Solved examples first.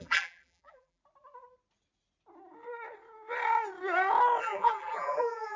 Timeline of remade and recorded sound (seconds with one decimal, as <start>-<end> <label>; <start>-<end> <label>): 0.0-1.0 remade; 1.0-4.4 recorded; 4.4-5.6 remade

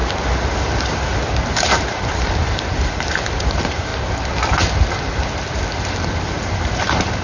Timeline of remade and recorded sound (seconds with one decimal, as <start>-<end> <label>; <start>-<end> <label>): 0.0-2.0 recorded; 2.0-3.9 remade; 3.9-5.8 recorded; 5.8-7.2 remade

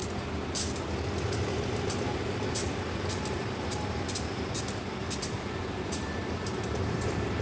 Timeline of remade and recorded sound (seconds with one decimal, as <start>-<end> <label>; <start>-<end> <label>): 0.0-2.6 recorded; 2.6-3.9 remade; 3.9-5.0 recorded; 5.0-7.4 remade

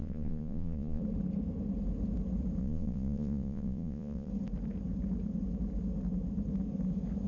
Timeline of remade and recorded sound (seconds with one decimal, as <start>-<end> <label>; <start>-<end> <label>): 0.0-1.0 remade; 1.0-2.6 recorded; 2.6-4.3 remade; 4.3-7.3 recorded

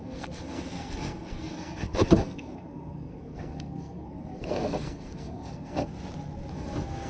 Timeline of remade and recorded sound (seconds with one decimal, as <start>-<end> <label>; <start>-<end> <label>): 0.0-5.9 remade; 5.9-6.5 recorded; 6.5-7.1 remade

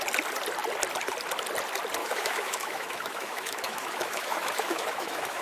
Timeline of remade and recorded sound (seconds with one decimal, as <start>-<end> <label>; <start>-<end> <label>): 0.0-2.0 recorded; 2.0-5.4 remade